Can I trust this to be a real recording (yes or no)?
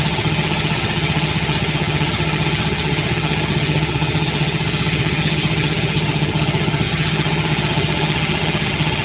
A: no